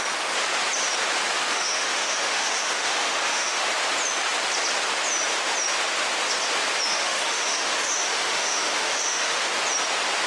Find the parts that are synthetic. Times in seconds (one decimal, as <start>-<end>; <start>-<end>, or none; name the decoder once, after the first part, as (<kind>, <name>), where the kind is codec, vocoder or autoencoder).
1.5-3.6 (autoencoder, DAC-VAE); 6.9-9.5

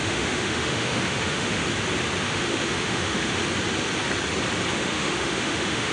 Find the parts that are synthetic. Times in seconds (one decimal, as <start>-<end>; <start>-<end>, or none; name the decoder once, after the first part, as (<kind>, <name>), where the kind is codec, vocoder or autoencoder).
0.0-1.6 (autoencoder, DAC-VAE); 2.2-3.4; 4.7-5.9

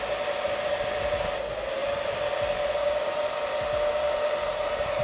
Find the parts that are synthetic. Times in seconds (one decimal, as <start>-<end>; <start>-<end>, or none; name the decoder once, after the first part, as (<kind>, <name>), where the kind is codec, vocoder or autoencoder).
none

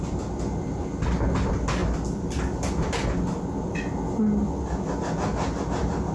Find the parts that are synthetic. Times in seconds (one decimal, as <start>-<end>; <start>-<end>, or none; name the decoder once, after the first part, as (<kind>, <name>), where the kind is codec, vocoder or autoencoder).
none

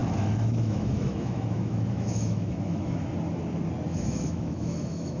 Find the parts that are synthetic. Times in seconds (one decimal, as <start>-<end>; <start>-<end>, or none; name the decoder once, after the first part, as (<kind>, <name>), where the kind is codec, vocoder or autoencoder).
0.0-3.1 (autoencoder, DAC-VAE); 3.9-5.2

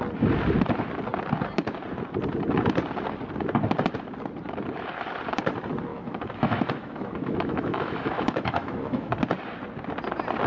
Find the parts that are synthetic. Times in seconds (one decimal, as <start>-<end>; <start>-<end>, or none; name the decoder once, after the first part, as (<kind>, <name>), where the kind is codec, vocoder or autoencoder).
5.9-9.1 (autoencoder, DAC-VAE)

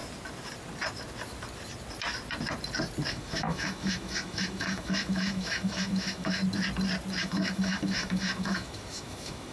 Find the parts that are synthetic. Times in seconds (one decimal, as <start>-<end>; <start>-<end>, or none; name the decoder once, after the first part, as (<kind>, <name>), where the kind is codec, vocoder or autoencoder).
3.1-6.4 (autoencoder, DAC-VAE); 7.2-9.5

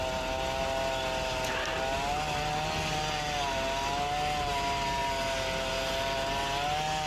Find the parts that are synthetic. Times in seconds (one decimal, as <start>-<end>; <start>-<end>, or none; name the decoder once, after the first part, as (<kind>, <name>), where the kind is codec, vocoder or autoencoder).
none